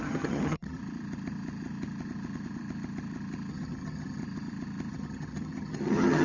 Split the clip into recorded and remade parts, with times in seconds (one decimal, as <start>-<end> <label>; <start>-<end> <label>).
0.0-0.8 remade; 0.8-3.5 recorded; 3.5-4.2 remade; 4.2-4.9 recorded; 4.9-6.2 remade